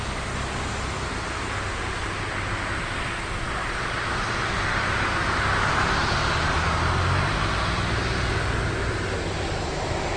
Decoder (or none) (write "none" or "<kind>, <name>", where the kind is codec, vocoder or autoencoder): none